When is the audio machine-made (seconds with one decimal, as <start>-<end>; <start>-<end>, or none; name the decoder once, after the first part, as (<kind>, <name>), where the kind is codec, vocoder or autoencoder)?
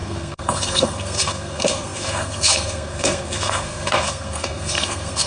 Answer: 0.0-5.3 (codec, SNAC)